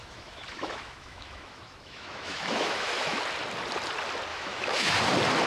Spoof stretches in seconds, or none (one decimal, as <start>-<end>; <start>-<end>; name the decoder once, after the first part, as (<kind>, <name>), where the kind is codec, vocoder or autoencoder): 0.0-3.2 (autoencoder, DAC-VAE); 4.3-5.0